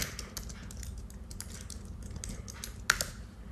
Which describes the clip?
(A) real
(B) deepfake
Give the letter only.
A